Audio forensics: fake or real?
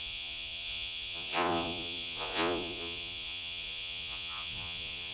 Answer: fake